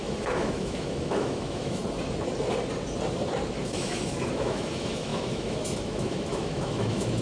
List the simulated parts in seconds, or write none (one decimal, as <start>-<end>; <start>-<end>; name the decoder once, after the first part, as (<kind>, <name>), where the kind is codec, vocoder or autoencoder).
0.0-1.8 (autoencoder, DAC-VAE); 3.6-7.2